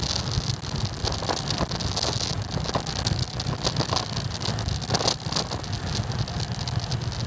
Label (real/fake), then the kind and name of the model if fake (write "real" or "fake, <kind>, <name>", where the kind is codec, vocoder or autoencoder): real